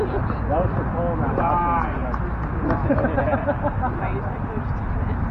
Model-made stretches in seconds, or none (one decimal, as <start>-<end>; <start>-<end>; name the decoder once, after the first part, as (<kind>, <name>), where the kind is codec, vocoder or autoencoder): none